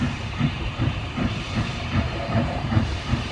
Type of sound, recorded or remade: remade